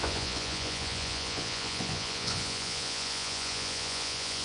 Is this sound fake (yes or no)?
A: yes